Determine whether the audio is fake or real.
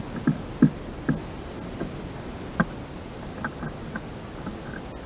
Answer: real